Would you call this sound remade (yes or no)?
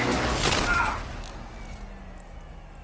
no